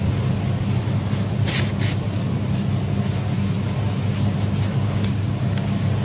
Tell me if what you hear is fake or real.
real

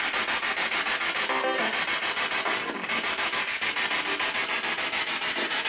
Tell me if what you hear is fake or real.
real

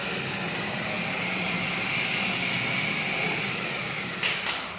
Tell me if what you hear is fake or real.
real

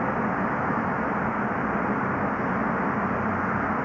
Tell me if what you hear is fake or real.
real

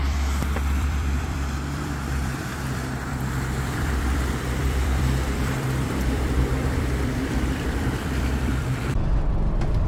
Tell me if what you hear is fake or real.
fake